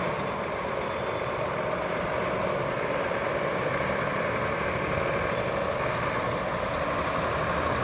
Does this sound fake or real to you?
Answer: real